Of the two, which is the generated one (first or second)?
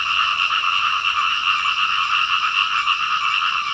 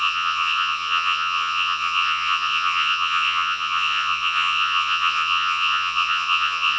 second